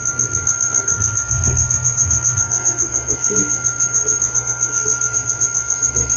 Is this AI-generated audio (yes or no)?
yes